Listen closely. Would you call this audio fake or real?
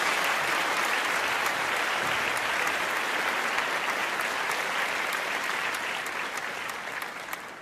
real